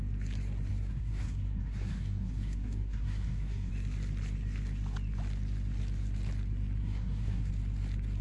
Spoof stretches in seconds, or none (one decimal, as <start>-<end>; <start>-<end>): 0.7-3.7; 6.8-7.5